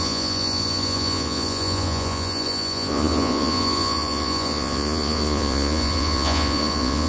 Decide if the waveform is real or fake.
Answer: fake